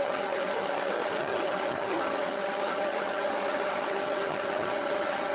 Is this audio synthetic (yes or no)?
yes